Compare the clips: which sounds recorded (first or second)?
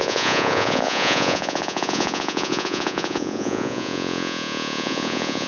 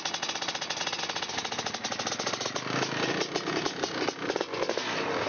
second